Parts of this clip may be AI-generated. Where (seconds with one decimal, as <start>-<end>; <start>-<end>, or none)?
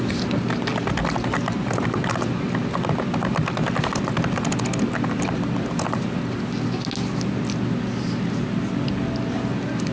none